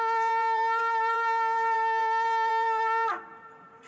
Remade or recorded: remade